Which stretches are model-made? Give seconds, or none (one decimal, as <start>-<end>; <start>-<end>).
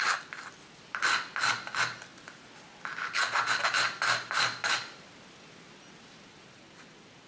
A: none